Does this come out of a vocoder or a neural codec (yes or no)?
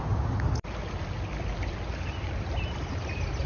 no